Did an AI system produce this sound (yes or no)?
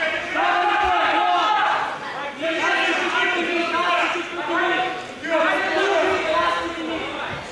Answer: no